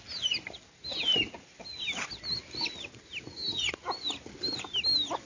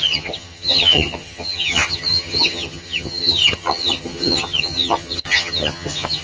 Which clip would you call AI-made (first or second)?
second